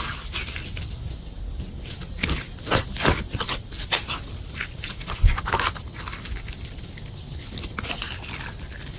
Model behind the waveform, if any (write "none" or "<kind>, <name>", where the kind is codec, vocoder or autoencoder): none